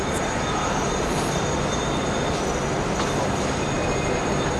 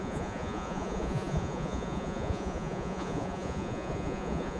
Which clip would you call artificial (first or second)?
second